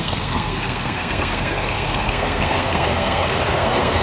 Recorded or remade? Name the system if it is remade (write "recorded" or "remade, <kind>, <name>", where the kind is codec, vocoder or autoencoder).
remade, codec, SNAC